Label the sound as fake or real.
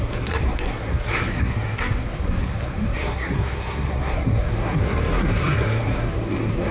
fake